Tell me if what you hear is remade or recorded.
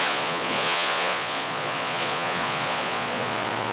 remade